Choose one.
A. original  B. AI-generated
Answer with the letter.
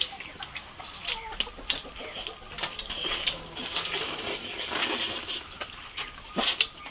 A